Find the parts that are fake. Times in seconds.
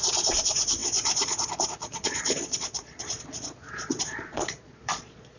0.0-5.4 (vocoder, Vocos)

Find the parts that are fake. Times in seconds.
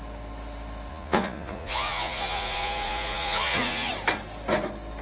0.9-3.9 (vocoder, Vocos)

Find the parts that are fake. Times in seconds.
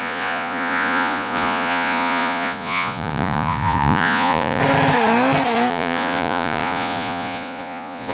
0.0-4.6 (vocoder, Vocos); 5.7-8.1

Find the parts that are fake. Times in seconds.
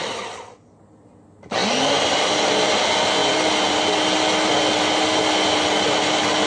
none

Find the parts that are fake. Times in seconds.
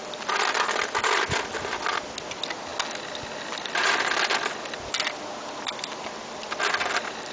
none